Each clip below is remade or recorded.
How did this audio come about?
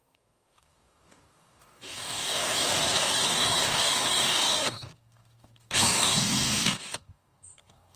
remade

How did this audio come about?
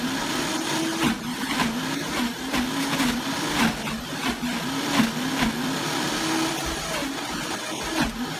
recorded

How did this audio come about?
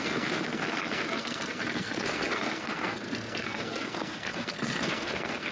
remade